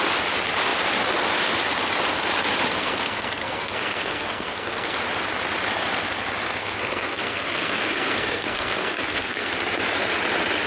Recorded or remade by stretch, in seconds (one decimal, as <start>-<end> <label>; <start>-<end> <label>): 0.0-2.8 recorded; 2.8-5.0 remade; 5.0-6.6 recorded; 6.6-9.5 remade; 9.5-10.7 recorded